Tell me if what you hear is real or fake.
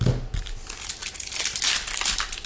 real